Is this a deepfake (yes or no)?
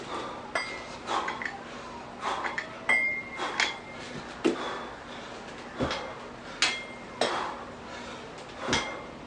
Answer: no